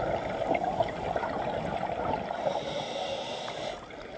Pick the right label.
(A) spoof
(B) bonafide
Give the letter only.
B